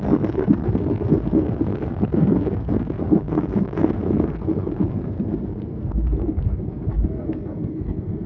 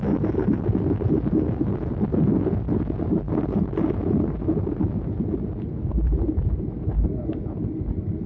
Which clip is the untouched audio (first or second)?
second